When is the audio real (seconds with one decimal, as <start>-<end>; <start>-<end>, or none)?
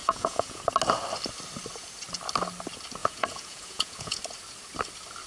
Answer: 0.6-3.0; 4.2-5.3